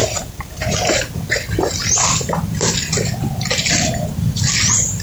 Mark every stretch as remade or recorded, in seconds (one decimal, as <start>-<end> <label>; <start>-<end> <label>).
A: 0.0-1.0 remade; 1.0-5.0 recorded